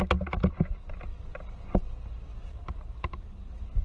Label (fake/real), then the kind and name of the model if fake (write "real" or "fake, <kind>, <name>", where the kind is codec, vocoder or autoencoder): real